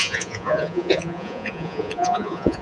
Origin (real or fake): fake